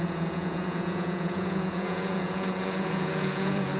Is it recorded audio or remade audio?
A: remade